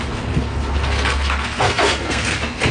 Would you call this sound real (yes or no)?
no